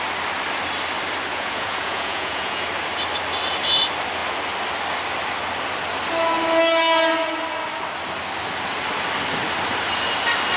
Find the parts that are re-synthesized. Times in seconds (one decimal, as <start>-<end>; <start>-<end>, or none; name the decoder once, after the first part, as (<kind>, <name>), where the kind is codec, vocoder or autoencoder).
1.3-2.7 (vocoder, Vocos)